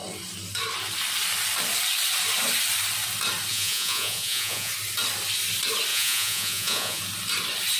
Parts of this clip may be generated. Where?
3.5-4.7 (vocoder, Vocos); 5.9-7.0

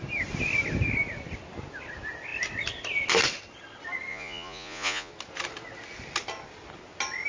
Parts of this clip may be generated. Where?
4.1-5.1 (vocoder, Vocos)

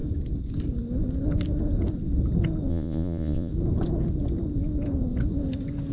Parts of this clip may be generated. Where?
2.7-3.5 (vocoder, Vocos)